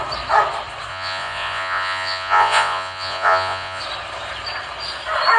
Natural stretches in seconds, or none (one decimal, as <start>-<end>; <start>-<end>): 0.0-0.9; 3.8-5.4